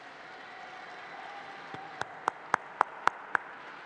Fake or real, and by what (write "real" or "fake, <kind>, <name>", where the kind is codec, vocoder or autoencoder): real